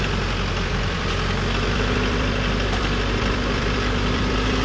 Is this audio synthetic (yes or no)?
yes